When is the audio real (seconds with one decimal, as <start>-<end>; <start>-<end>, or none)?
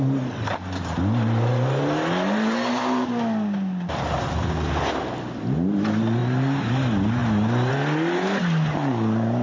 0.0-9.4